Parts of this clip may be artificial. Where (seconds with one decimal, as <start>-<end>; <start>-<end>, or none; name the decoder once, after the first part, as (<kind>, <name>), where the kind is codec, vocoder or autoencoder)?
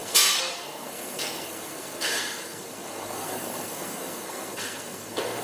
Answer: 0.0-5.4 (codec, SNAC)